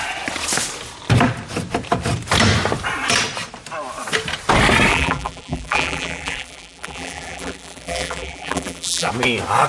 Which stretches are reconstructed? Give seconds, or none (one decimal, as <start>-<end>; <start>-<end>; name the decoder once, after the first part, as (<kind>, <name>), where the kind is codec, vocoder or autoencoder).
4.9-9.1 (vocoder, BigVGAN v2)